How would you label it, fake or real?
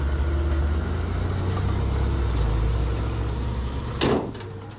real